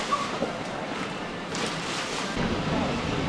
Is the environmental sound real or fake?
fake